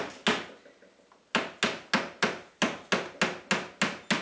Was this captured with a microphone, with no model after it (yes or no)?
yes